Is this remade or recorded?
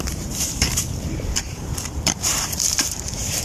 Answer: remade